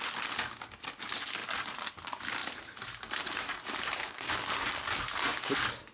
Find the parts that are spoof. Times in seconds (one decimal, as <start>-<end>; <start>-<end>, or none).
1.4-1.9; 2.4-4.3; 5.3-5.9